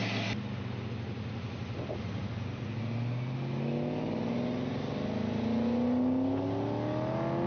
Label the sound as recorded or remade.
recorded